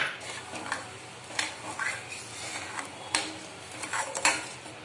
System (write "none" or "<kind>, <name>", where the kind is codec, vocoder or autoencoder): none